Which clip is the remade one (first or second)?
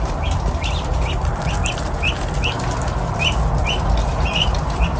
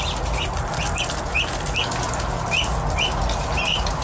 first